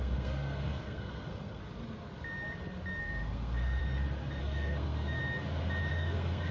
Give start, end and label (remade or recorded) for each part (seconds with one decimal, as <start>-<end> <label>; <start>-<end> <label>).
0.0-1.6 remade; 1.6-3.0 recorded; 3.0-3.8 remade; 3.8-4.4 recorded; 4.4-5.2 remade; 5.2-5.9 recorded; 5.9-6.5 remade